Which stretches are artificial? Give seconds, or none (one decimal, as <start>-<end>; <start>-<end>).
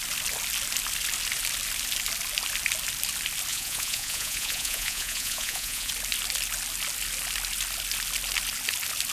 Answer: 3.5-5.9